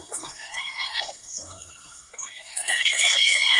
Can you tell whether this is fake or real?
fake